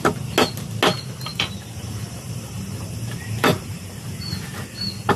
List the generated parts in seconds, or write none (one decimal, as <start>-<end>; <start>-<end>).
1.3-4.4